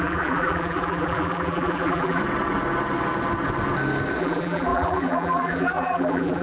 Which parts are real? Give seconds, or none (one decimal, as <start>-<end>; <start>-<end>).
2.2-4.2